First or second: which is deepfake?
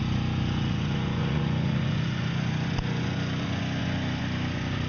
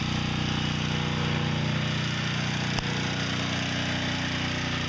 first